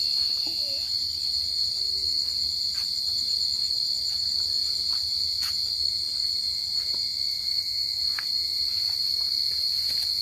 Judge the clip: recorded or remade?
recorded